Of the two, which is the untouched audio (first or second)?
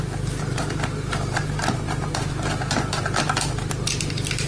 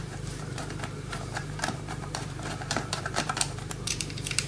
first